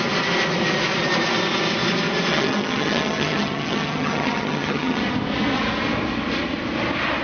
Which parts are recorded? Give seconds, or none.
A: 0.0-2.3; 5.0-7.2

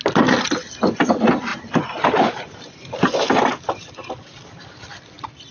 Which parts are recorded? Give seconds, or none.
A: 0.0-1.5; 4.8-5.5

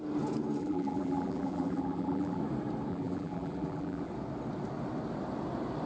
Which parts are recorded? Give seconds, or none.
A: 0.0-0.6; 2.4-2.9; 4.1-5.9

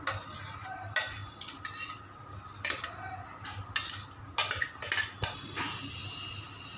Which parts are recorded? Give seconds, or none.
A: 0.0-6.0